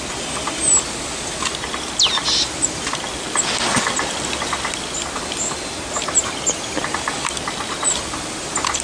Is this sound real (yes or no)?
yes